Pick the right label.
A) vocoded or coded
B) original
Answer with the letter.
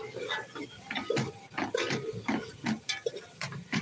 B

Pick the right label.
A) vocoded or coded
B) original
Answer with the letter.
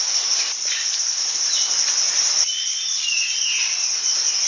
B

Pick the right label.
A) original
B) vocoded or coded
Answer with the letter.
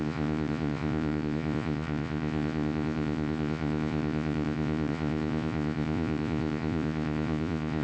B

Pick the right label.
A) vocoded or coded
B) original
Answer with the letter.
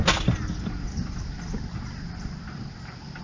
B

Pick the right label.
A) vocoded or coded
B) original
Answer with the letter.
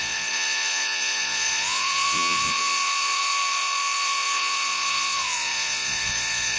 A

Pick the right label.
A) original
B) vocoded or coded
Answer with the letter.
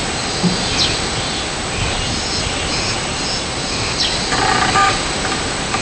A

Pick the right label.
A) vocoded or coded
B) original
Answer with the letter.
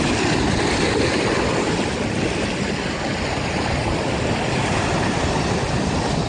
B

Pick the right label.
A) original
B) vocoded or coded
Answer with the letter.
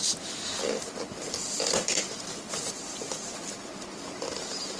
A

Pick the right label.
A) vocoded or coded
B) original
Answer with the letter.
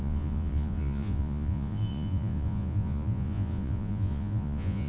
A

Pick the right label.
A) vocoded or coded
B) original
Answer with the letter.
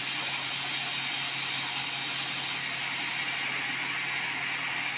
B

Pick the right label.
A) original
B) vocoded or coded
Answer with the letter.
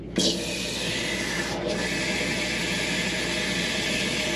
A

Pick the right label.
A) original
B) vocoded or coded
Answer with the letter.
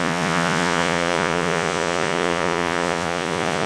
B